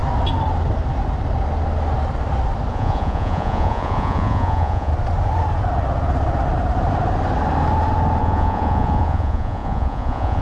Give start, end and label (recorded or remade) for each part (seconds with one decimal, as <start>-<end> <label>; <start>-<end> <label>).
0.0-2.7 recorded; 2.7-4.9 remade; 4.9-8.2 recorded; 8.2-10.4 remade